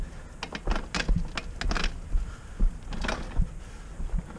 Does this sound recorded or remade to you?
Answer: recorded